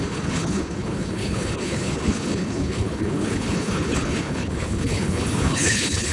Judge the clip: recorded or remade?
remade